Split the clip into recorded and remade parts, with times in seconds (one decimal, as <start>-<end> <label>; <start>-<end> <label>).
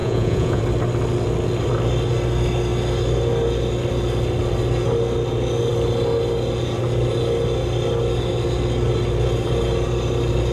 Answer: 0.0-0.6 remade; 0.6-10.5 recorded